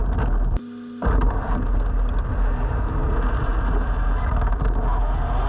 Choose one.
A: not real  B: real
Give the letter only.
B